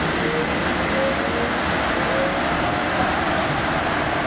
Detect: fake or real real